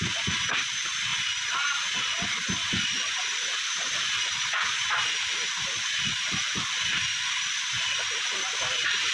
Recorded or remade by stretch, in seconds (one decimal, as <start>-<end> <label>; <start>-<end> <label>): 0.0-6.9 recorded; 6.9-7.6 remade; 7.6-9.1 recorded